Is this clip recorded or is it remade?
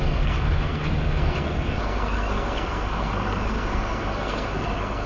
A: remade